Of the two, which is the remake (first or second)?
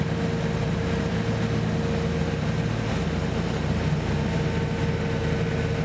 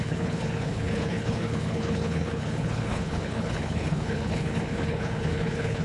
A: second